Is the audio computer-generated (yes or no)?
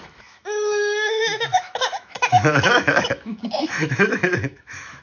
yes